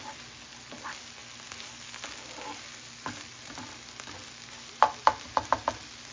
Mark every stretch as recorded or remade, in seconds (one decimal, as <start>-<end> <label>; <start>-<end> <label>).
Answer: 0.0-6.1 recorded